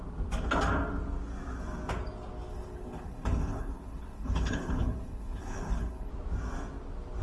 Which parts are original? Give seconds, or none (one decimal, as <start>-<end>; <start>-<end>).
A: 0.0-2.5; 6.1-7.2

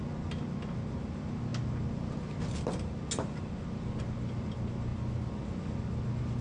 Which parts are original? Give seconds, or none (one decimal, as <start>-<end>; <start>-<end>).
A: 0.0-6.4

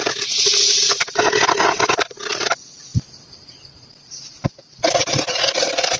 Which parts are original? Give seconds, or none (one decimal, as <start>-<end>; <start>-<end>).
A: 0.0-2.9